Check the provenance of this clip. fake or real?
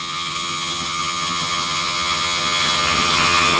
fake